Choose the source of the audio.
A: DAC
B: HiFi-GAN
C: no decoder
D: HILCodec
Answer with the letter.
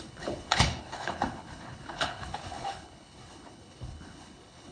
D